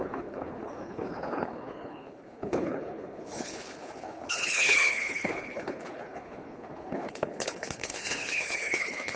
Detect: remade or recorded remade